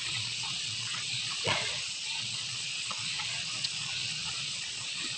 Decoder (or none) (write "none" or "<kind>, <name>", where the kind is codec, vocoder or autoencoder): vocoder, Vocos